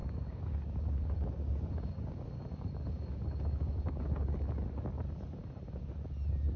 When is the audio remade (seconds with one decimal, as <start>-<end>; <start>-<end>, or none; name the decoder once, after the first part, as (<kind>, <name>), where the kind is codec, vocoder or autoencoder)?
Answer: 0.0-4.0 (codec, DAC)